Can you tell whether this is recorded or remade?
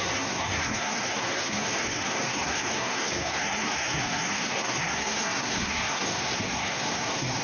remade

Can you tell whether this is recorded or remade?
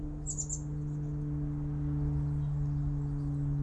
recorded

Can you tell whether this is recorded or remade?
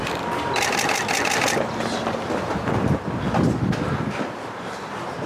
recorded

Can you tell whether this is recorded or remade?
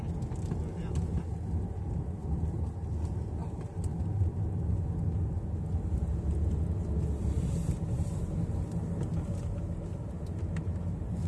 recorded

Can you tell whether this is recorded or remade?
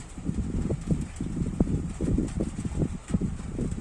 remade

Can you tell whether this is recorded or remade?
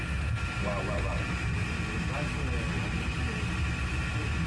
recorded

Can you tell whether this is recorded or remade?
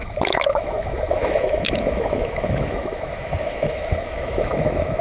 remade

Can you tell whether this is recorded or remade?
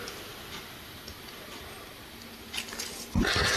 recorded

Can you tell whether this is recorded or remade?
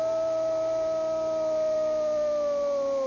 recorded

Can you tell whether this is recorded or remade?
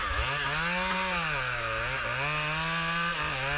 recorded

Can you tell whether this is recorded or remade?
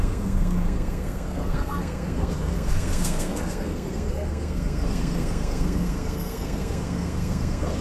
remade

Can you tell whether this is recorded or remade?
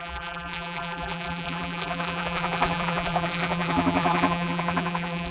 remade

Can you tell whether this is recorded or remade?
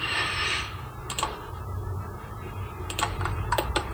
remade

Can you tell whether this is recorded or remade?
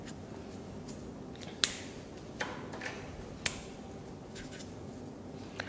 recorded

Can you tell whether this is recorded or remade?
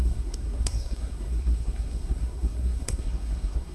remade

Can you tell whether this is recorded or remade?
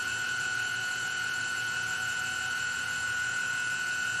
remade